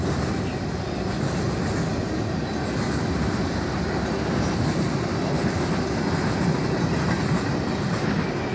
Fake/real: real